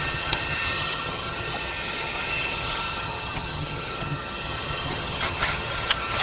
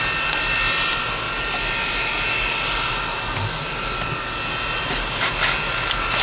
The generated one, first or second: first